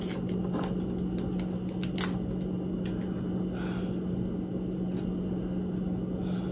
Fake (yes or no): no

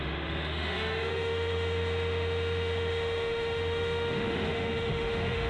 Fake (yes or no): yes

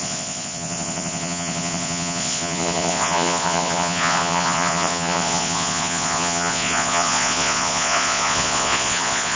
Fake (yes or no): yes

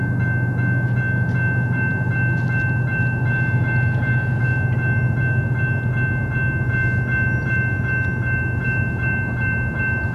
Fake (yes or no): no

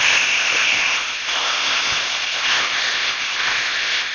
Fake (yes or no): yes